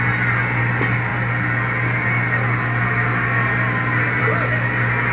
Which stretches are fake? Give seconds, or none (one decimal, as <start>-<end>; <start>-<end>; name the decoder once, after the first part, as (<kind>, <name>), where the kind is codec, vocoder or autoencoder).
none